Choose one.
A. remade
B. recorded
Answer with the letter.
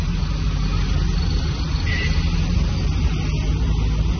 B